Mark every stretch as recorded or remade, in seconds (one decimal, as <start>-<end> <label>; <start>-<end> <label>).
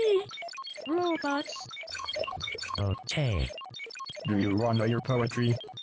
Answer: 0.0-1.9 recorded; 1.9-2.8 remade; 2.8-5.8 recorded